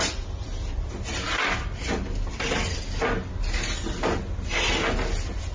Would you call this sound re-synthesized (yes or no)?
no